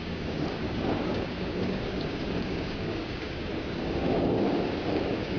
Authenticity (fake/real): fake